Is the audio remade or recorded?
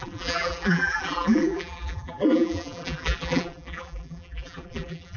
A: remade